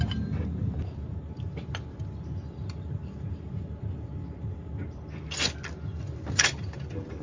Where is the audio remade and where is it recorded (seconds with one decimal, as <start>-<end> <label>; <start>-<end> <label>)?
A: 0.0-7.2 recorded